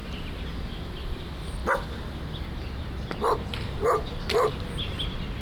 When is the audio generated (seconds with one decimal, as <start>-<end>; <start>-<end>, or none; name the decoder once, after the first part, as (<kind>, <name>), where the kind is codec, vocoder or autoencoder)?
none